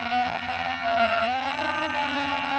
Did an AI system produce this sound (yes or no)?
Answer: yes